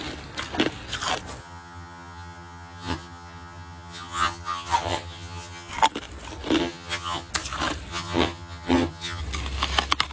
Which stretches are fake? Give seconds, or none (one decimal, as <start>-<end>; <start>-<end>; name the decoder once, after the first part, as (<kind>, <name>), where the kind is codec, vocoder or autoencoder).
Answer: 1.4-5.7 (vocoder, HiFi-GAN); 6.6-7.3; 7.9-9.2